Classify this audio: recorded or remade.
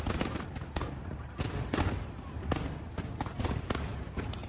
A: recorded